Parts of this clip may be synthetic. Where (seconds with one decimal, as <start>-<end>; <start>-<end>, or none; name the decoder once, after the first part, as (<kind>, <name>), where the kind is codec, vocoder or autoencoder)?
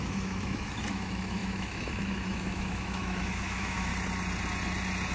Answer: 0.0-3.9 (autoencoder, DAC-VAE)